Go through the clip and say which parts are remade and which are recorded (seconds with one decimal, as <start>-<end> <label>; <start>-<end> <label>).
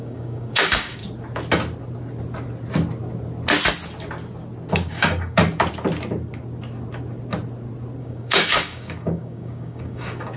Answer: 0.0-1.0 remade; 1.0-4.7 recorded; 4.7-5.4 remade; 5.4-8.0 recorded; 8.0-10.4 remade